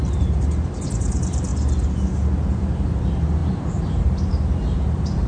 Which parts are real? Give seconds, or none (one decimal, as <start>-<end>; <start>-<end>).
1.5-2.6